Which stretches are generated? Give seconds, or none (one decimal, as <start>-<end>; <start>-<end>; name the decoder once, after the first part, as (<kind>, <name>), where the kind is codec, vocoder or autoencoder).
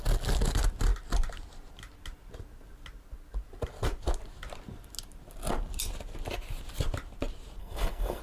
7.6-8.2 (codec, SNAC)